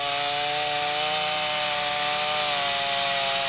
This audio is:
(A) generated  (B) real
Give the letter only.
B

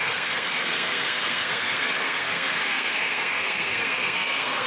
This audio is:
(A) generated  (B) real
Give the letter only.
A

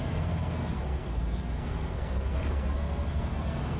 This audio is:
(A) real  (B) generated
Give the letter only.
B